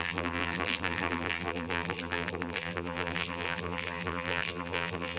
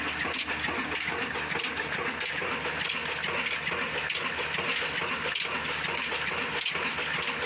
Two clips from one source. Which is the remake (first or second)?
first